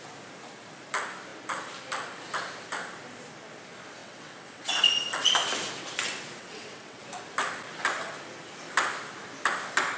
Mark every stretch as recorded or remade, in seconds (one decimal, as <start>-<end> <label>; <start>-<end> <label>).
0.0-4.0 recorded; 4.0-4.8 remade; 4.8-6.4 recorded; 6.4-7.0 remade; 7.0-10.0 recorded